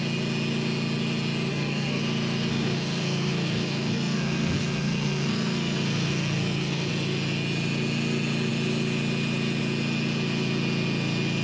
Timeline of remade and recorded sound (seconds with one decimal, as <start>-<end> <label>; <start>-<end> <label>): 0.0-1.5 recorded; 1.5-2.0 remade; 2.0-2.5 recorded; 2.5-6.9 remade; 6.9-11.4 recorded

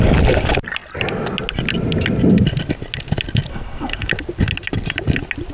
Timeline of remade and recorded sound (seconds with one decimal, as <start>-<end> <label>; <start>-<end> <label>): 0.0-3.5 recorded; 3.5-4.1 remade; 4.1-5.5 recorded

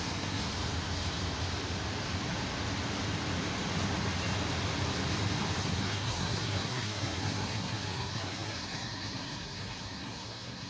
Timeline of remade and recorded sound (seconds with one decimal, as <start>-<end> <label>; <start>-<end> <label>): 0.0-0.5 remade; 0.5-5.6 recorded; 5.6-10.7 remade